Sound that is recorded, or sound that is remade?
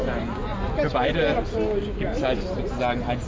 recorded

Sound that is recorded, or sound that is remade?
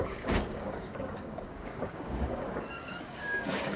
remade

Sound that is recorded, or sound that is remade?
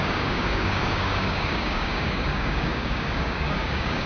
remade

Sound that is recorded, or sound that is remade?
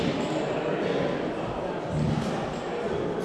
recorded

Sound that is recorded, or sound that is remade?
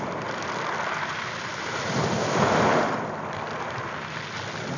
recorded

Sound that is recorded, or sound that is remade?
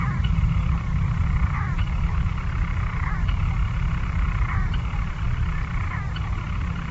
remade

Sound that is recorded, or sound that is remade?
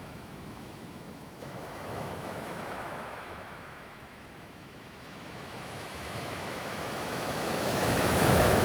remade